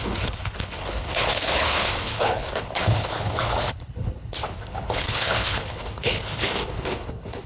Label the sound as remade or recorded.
remade